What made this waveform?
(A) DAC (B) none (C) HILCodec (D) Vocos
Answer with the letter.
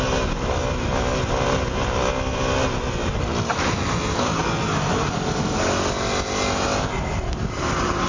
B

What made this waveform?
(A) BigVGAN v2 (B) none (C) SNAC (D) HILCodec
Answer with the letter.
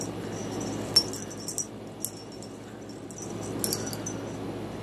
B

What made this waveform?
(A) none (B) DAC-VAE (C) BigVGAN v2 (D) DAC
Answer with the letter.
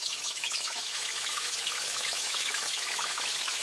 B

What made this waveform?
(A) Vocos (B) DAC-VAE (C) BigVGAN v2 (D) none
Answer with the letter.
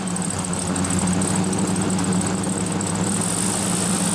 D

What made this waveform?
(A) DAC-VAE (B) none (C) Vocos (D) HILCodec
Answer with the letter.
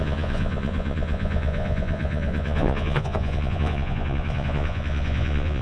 C